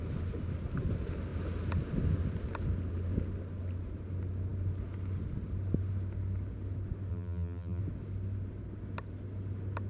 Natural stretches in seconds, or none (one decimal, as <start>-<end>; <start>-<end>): 0.0-7.1; 7.8-9.9